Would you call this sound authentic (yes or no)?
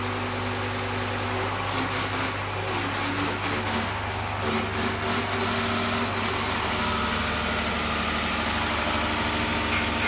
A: yes